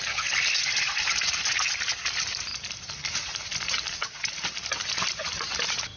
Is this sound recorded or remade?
recorded